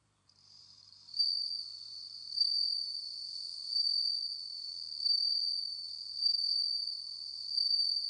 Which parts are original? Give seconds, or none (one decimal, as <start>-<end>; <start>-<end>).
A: 4.7-5.3